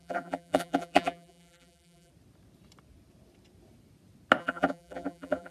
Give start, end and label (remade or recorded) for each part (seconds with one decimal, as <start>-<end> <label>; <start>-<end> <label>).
0.0-2.1 remade; 2.1-4.4 recorded; 4.4-5.5 remade